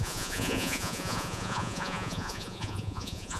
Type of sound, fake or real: fake